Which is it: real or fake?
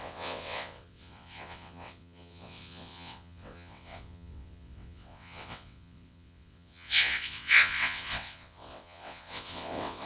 fake